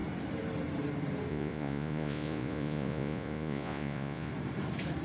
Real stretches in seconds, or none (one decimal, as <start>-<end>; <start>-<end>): 0.0-1.3; 4.3-5.0